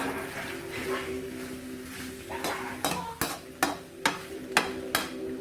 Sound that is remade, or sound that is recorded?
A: recorded